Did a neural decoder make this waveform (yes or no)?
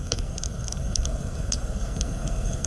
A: yes